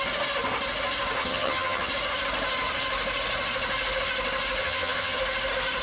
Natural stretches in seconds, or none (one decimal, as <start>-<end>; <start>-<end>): 0.0-1.2; 1.9-4.6; 5.2-5.8